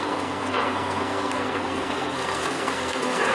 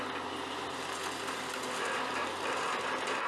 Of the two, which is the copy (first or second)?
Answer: first